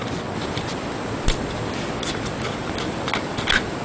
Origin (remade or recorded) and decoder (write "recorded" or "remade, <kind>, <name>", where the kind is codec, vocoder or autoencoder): recorded